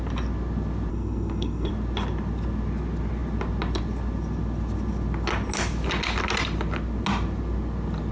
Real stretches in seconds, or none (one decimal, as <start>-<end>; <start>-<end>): 0.0-0.9; 1.7-8.1